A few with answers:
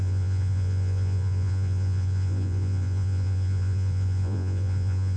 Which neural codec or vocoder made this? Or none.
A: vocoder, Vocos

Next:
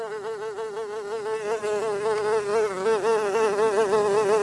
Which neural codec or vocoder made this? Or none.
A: none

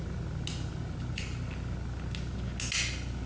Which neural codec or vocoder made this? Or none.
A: none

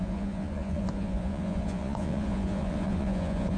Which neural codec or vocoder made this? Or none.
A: vocoder, Vocos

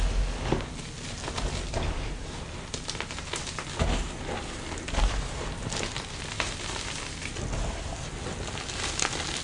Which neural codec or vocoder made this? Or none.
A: none